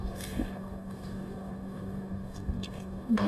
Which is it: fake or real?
fake